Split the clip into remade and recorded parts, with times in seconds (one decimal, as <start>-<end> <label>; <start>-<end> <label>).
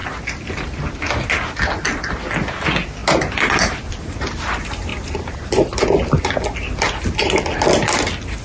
0.0-4.9 recorded; 4.9-6.3 remade; 6.3-8.4 recorded